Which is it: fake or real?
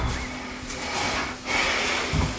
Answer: real